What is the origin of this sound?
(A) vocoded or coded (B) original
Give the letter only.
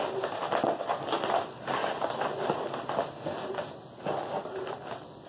B